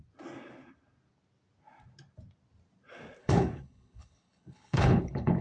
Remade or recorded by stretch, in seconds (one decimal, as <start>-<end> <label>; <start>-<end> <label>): 0.0-3.2 recorded; 3.2-5.4 remade